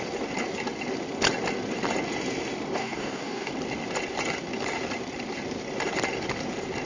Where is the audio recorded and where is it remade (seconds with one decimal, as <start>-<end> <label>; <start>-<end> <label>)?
0.0-2.8 recorded; 2.8-3.5 remade; 3.5-6.9 recorded